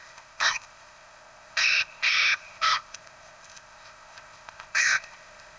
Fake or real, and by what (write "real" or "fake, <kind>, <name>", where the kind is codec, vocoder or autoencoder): fake, codec, ZipCodec